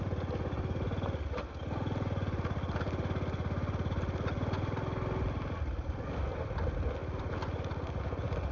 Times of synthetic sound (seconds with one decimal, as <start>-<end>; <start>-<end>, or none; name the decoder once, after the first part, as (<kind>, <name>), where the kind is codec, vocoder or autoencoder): none

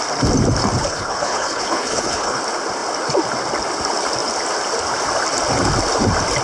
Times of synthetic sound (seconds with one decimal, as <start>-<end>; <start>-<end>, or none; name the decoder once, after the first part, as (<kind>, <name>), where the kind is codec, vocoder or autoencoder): 0.9-2.4 (codec, HILCodec)